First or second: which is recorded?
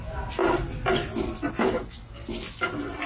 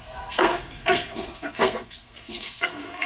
first